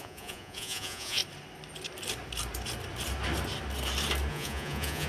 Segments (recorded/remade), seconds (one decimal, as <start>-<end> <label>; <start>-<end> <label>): 0.0-1.2 remade; 1.2-4.3 recorded; 4.3-5.1 remade